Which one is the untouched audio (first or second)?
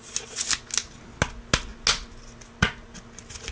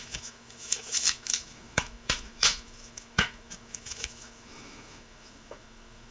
first